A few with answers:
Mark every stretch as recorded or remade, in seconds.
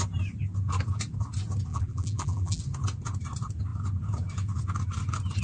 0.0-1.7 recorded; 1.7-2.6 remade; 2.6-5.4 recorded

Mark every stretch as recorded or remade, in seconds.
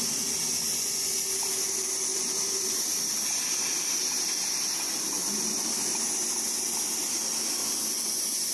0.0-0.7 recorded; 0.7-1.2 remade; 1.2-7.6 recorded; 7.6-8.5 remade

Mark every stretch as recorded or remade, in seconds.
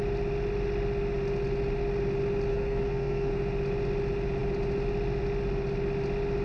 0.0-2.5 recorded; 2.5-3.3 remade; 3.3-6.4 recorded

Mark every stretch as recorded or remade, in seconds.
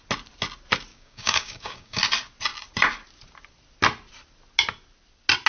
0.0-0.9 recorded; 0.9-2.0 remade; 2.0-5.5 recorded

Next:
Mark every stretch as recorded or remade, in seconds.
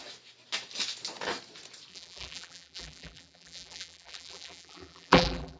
0.0-1.9 recorded; 1.9-5.6 remade